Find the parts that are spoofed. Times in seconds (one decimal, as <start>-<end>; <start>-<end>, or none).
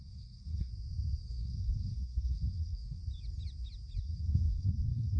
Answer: 0.0-0.7; 1.2-3.0; 4.0-5.2